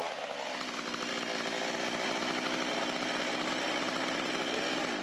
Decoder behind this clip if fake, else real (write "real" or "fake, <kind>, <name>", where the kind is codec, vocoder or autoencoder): real